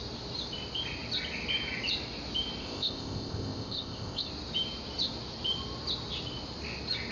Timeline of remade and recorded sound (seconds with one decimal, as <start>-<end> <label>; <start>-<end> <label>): 0.0-2.6 recorded; 2.6-4.3 remade; 4.3-7.1 recorded